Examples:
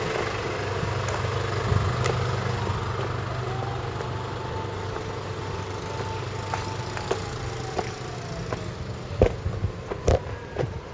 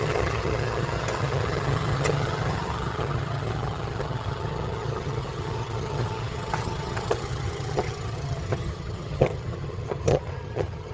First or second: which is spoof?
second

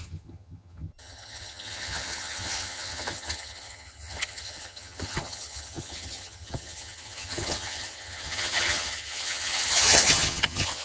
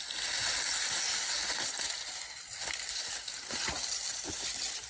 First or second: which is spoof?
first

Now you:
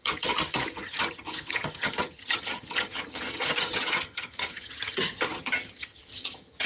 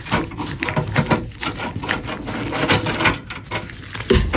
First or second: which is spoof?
first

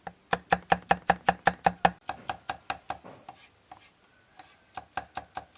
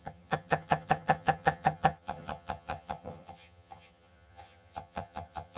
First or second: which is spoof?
second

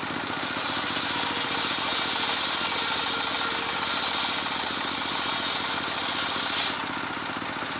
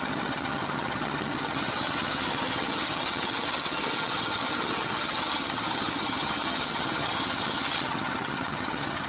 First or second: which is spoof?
second